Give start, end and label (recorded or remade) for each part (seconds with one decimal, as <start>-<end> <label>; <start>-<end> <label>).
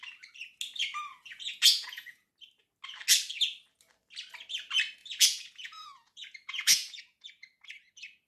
0.0-1.1 recorded; 1.1-2.3 remade; 2.3-5.0 recorded; 5.0-7.7 remade; 7.7-8.3 recorded